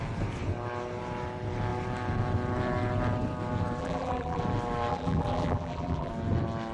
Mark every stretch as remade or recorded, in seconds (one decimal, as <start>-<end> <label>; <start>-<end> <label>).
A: 0.0-3.8 recorded; 3.8-4.4 remade; 4.4-4.9 recorded; 4.9-6.1 remade; 6.1-6.7 recorded